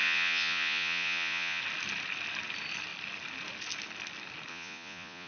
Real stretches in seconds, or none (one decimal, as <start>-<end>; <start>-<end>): 1.6-4.5